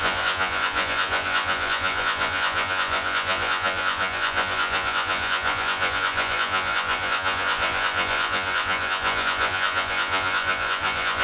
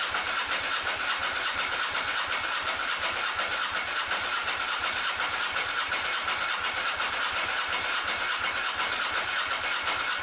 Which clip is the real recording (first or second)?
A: second